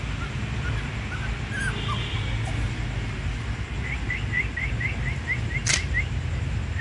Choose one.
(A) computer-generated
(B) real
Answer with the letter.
B